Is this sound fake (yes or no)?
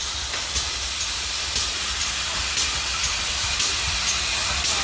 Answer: no